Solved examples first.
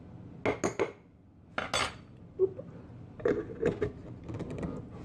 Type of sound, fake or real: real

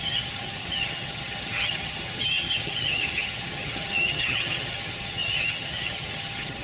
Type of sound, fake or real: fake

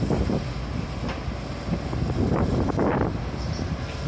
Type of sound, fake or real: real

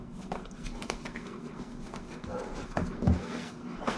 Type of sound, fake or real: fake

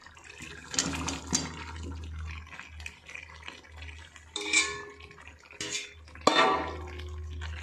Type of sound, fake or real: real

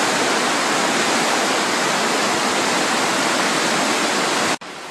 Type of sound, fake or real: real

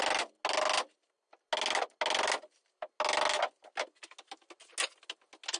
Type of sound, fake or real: real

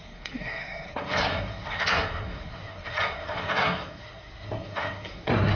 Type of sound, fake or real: fake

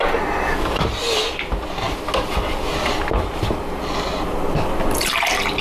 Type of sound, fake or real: real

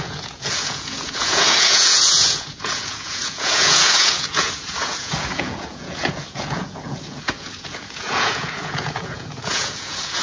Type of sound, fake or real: fake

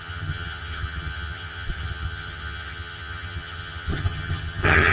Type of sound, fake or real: fake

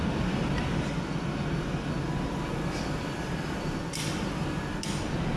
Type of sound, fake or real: real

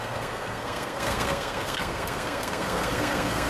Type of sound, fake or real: fake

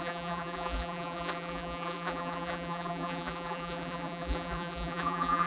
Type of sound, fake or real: fake